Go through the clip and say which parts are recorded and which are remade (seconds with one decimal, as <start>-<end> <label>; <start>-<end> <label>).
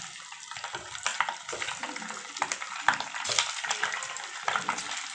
0.0-5.1 recorded